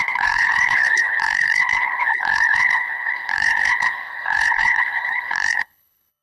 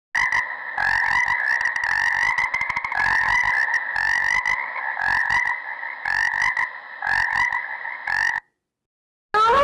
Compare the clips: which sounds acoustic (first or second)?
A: second